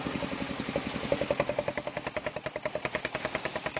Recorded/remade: recorded